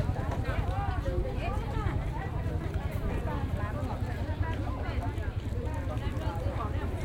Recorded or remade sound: recorded